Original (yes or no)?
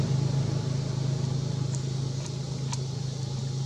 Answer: yes